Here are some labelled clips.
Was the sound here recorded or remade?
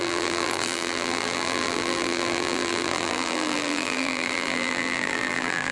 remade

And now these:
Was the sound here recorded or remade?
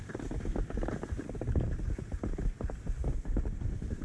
recorded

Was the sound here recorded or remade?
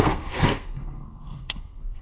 remade